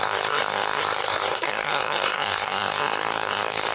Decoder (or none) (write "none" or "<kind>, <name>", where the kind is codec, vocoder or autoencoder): codec, SNAC